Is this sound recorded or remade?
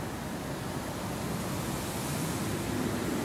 recorded